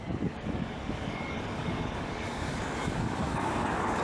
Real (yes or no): no